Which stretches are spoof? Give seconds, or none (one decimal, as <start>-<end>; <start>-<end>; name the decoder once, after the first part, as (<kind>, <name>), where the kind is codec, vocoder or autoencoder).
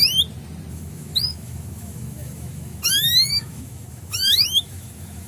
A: 0.7-5.3 (autoencoder, DAC-VAE)